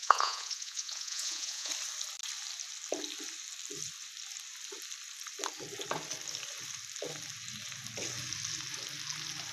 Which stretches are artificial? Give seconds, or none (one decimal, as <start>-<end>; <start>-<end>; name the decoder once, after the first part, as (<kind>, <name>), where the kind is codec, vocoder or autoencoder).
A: 0.0-1.7 (vocoder, Vocos)